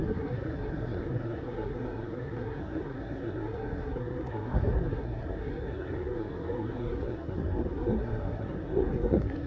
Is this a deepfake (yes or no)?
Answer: yes